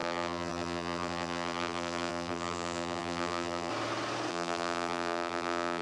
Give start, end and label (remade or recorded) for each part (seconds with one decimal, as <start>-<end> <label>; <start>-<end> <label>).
0.0-3.7 remade; 3.7-4.3 recorded; 4.3-5.8 remade